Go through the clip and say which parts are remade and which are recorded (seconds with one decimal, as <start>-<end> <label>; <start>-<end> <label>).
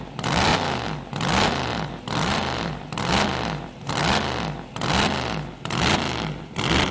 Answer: 0.0-1.7 recorded; 1.7-3.1 remade; 3.1-6.9 recorded